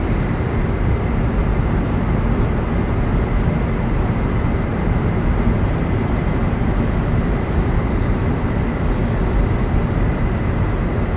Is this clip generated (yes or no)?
no